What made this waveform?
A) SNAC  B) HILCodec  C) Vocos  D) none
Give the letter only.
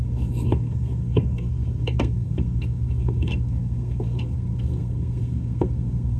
A